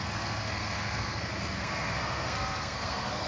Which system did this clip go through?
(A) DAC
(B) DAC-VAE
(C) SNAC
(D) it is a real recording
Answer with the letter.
C